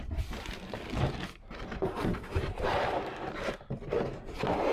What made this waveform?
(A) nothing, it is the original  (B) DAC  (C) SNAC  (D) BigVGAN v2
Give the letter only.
A